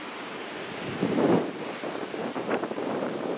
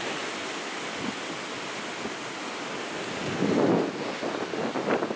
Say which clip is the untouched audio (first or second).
second